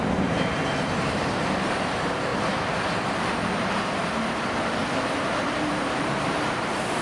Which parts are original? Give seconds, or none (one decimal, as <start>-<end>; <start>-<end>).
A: 2.3-3.2; 4.8-5.5